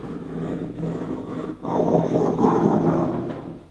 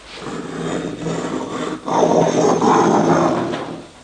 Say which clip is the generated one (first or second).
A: first